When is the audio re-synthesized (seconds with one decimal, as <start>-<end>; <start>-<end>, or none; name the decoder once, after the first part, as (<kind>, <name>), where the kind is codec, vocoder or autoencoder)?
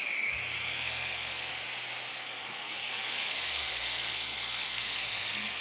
0.6-1.5 (codec, SNAC); 2.1-5.6